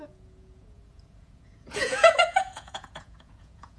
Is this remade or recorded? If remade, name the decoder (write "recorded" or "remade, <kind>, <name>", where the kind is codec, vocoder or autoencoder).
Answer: remade, vocoder, Vocos